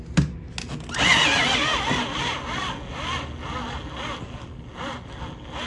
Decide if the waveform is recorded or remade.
recorded